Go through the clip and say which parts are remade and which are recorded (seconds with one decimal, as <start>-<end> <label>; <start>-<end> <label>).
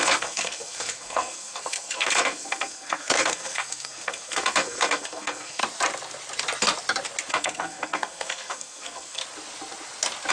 0.0-5.6 remade; 5.6-7.3 recorded; 7.3-9.2 remade; 9.2-10.3 recorded